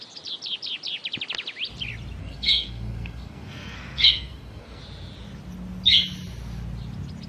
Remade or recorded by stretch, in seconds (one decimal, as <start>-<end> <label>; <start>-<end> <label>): 0.0-2.2 recorded; 2.2-4.8 remade; 4.8-7.3 recorded